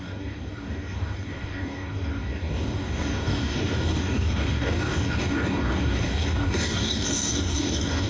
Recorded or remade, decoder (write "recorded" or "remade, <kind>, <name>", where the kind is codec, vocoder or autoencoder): remade, codec, DAC